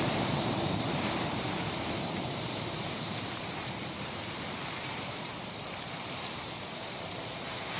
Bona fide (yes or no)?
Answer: no